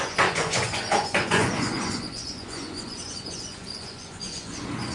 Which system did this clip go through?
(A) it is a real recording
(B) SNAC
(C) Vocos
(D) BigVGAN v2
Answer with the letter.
C